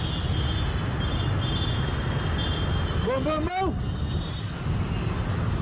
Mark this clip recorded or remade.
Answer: recorded